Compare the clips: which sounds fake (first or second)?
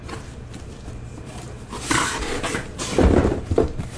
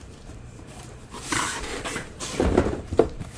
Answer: second